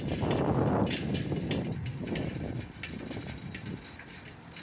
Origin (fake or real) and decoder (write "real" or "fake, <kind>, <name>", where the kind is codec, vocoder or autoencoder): real